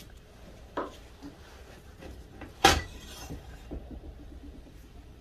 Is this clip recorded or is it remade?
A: remade